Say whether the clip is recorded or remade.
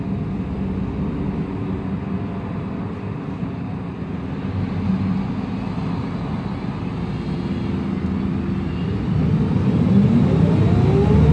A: recorded